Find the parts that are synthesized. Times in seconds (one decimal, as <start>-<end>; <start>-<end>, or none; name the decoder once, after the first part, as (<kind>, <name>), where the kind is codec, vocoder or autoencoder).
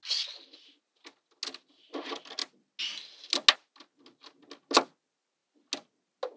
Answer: none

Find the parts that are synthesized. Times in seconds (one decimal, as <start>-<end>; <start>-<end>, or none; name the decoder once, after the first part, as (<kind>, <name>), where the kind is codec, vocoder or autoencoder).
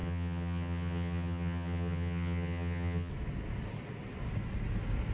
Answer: 0.0-3.1 (vocoder, HiFi-GAN)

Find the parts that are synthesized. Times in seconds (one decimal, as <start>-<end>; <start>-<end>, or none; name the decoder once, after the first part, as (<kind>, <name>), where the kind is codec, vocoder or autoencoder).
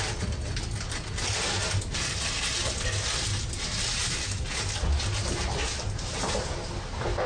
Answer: none